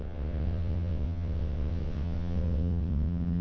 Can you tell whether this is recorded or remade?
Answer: remade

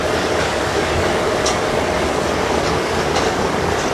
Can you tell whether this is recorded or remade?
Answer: remade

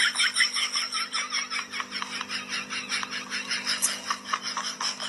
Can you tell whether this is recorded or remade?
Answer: recorded